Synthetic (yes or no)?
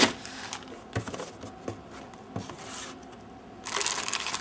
no